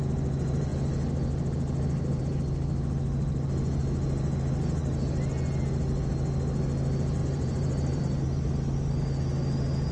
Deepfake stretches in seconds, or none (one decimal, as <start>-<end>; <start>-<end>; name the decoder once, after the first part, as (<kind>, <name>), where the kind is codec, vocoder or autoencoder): 7.2-8.0 (vocoder, BigVGAN v2)